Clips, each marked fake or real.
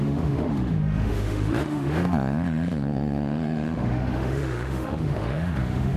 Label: fake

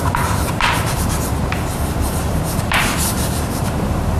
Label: fake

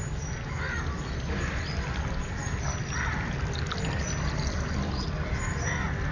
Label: real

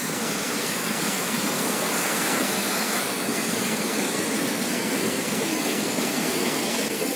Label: fake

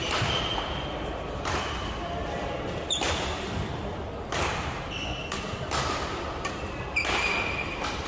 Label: real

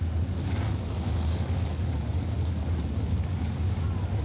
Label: fake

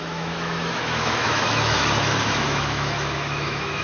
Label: fake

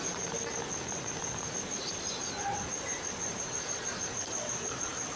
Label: real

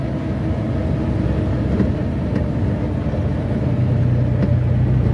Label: real